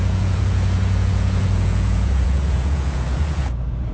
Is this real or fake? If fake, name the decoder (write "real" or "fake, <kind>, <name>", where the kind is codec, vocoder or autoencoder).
fake, vocoder, Vocos